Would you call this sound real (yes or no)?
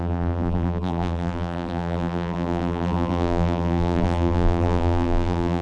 no